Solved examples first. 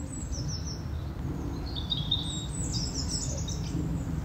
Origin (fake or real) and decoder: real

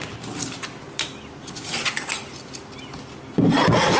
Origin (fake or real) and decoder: real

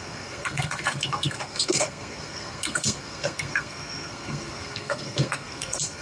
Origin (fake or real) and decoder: fake, codec, SNAC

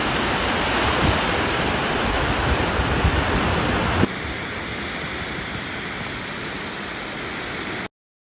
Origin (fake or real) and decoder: real